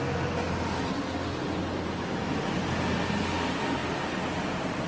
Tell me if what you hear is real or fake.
real